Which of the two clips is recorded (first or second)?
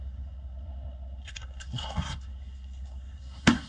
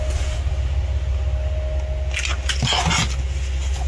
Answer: second